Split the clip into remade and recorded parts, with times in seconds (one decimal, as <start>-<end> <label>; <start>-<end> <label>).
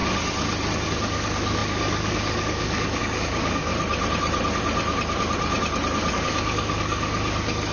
0.0-0.9 recorded; 0.9-3.7 remade; 3.7-6.1 recorded; 6.1-7.7 remade